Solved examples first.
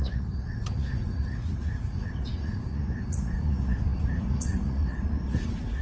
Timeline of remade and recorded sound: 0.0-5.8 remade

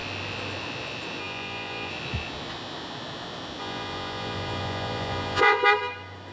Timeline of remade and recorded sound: 0.0-1.2 recorded; 1.2-1.9 remade; 1.9-3.6 recorded; 3.6-5.6 remade; 5.6-6.3 recorded

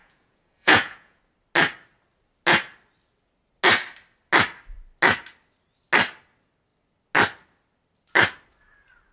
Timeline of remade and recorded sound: 0.0-1.2 remade; 1.2-9.1 recorded